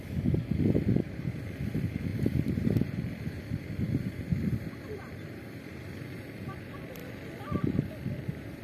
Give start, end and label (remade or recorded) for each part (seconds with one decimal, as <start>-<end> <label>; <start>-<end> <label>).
0.0-7.0 remade; 7.0-8.2 recorded; 8.2-8.6 remade